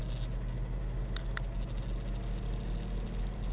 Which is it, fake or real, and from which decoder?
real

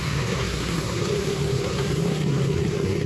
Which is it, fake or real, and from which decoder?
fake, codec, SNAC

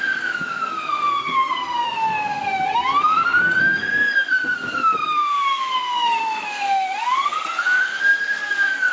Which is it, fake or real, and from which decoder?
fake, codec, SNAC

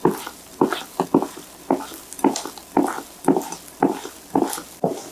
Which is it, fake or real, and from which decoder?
real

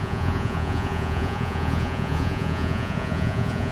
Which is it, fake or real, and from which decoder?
fake, vocoder, Vocos